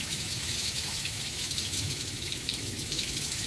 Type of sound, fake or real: fake